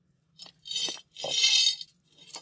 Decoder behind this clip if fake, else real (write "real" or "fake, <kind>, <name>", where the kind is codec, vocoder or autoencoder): real